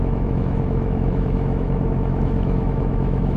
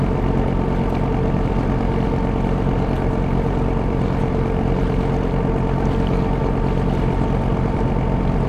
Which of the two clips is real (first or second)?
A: second